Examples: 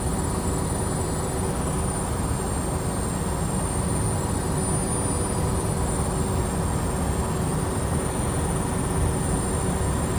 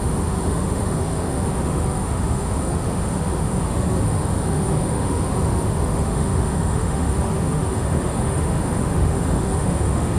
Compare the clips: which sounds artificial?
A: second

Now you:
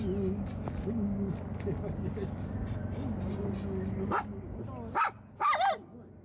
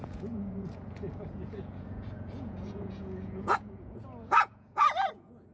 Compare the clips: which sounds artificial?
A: second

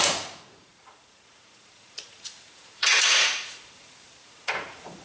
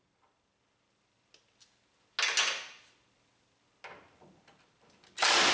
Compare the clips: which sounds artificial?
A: first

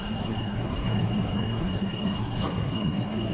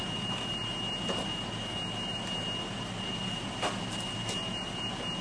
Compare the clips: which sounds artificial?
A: first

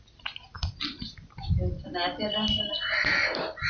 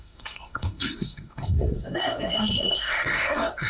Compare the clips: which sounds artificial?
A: second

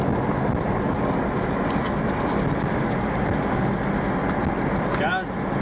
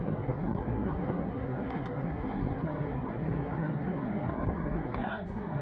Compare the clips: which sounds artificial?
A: second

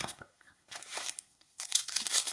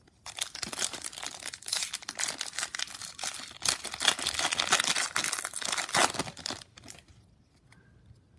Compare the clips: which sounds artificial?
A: first